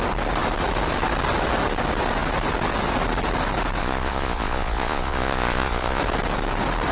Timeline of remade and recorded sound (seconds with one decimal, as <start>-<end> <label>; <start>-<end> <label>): 0.0-3.8 recorded; 3.8-6.0 remade; 6.0-6.9 recorded